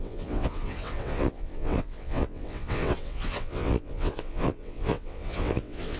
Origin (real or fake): fake